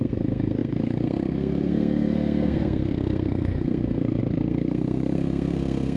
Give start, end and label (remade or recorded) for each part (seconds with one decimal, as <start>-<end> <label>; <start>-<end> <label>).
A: 0.0-6.0 remade